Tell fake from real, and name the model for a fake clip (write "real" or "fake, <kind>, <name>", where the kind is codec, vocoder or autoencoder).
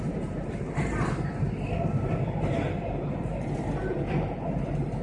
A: fake, vocoder, BigVGAN v2